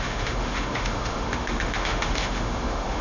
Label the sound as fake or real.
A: fake